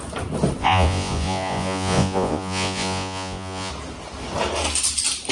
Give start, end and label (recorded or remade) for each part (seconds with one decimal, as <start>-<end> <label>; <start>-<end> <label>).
0.0-0.6 recorded; 0.6-3.7 remade; 3.7-5.3 recorded